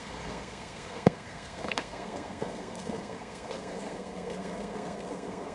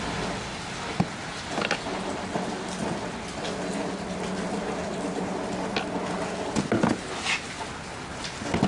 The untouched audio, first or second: second